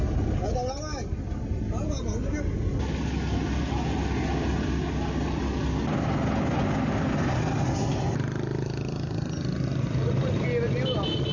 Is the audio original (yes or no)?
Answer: yes